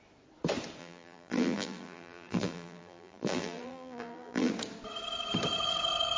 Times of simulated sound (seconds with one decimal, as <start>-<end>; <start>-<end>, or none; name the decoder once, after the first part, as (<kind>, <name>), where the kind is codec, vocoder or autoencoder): 0.8-4.5 (vocoder, BigVGAN v2)